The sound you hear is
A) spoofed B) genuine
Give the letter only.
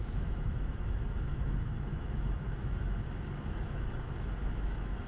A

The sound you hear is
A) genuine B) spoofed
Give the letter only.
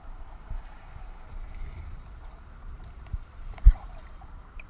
B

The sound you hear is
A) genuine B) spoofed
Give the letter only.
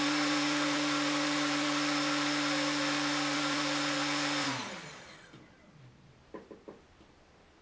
B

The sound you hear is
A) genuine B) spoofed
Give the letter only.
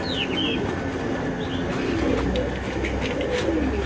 A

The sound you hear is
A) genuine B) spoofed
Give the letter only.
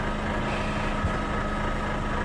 A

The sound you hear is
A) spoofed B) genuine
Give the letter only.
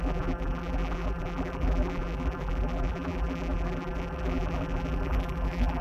A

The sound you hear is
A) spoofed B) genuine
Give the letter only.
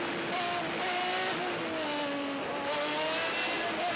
B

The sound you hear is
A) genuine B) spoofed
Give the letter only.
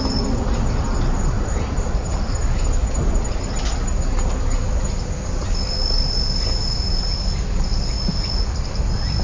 A